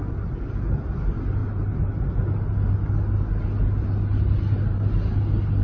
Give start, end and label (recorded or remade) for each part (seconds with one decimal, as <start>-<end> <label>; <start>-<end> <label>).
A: 0.0-5.6 recorded